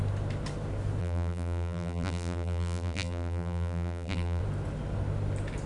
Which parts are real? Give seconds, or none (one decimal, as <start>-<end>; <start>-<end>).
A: 0.0-1.0; 4.4-5.7